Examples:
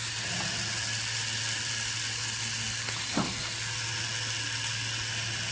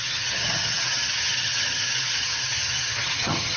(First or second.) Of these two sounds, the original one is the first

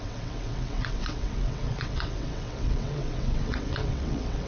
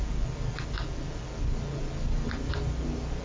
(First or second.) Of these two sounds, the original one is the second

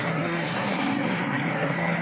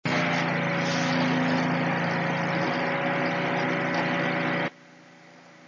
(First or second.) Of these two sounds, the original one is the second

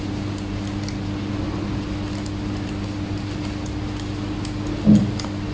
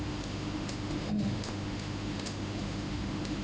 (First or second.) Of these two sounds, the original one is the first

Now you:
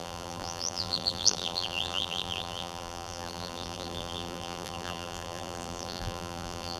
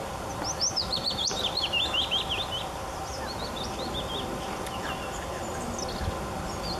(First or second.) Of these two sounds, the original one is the second